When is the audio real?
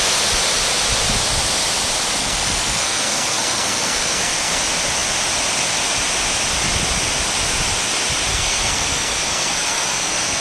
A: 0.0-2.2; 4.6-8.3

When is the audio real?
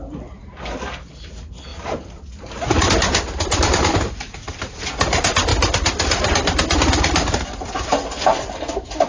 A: 0.0-9.1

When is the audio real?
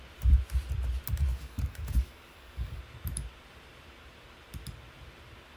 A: 0.0-1.3; 2.8-5.6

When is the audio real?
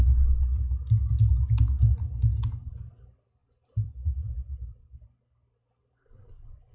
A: 0.0-3.4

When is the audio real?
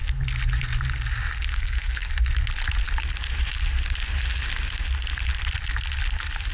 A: 0.0-1.5; 2.1-6.5